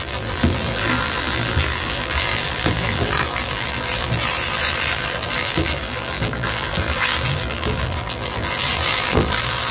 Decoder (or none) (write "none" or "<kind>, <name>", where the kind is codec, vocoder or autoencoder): vocoder, BigVGAN v2